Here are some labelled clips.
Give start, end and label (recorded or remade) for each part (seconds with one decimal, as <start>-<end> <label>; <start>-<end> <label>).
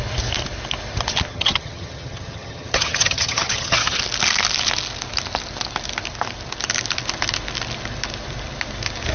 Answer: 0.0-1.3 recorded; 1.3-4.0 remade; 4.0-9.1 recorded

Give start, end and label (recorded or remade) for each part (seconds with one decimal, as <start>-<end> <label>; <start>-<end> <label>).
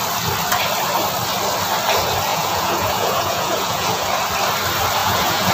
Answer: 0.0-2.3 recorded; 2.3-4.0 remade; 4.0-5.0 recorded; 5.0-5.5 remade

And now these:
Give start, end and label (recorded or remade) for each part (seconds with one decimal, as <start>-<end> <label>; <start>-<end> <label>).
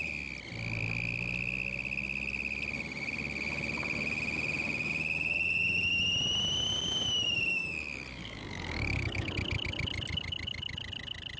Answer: 0.0-7.5 recorded; 7.5-9.3 remade; 9.3-11.4 recorded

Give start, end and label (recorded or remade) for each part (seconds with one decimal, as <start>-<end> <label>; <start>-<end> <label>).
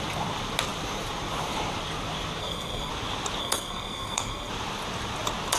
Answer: 0.0-2.4 recorded; 2.4-2.9 remade; 2.9-3.4 recorded; 3.4-4.5 remade; 4.5-5.6 recorded